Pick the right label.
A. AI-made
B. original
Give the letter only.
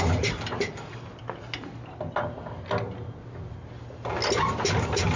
B